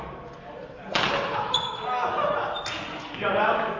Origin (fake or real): real